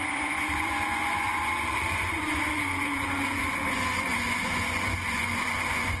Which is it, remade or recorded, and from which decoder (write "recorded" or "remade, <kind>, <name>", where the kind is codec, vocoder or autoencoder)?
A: remade, vocoder, Vocos